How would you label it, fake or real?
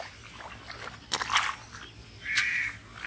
real